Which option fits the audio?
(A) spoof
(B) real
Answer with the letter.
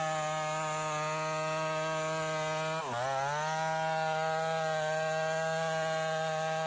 B